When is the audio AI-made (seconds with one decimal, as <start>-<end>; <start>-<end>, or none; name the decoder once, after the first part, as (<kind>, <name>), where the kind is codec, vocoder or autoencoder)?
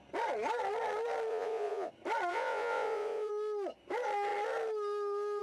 1.3-1.9 (vocoder, Vocos); 2.3-3.3